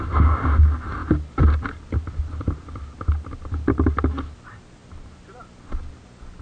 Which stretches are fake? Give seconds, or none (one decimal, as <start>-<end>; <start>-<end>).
none